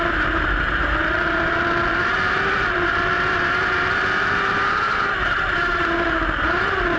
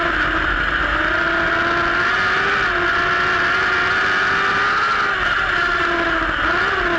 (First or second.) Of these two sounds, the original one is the second